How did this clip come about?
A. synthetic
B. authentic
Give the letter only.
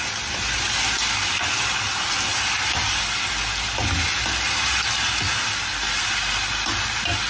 B